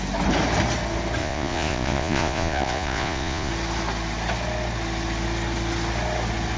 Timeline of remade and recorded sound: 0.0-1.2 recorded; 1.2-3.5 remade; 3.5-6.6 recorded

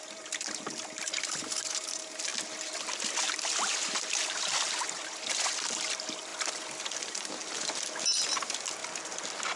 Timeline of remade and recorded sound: 0.0-9.6 recorded

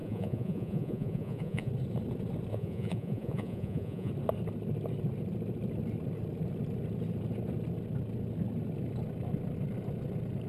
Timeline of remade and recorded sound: 0.0-1.7 remade; 1.7-2.5 recorded; 2.5-4.1 remade; 4.1-10.5 recorded

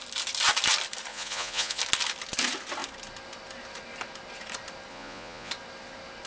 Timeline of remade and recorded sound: 0.0-1.1 recorded; 1.1-1.8 remade; 1.8-4.9 recorded; 4.9-5.5 remade; 5.5-6.3 recorded

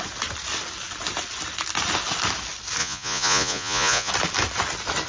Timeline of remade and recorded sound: 0.0-2.8 recorded; 2.8-4.1 remade; 4.1-5.1 recorded

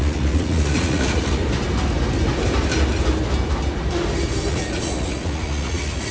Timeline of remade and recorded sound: 0.0-1.4 remade; 1.4-4.5 recorded; 4.5-6.1 remade

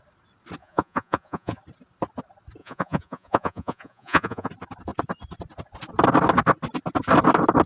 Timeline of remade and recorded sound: 0.0-0.6 recorded; 0.6-1.6 remade; 1.6-2.6 recorded; 2.6-4.5 remade; 4.5-7.7 recorded

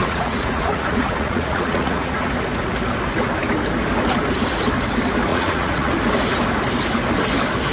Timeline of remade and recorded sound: 0.0-2.3 remade; 2.3-5.3 recorded; 5.3-5.9 remade; 5.9-7.7 recorded